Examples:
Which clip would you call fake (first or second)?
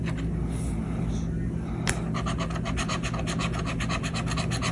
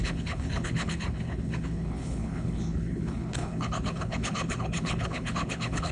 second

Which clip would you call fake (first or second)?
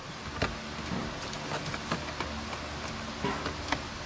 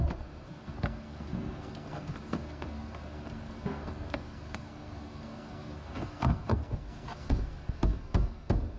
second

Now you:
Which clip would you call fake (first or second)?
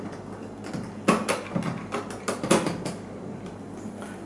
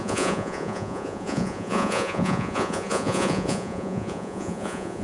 second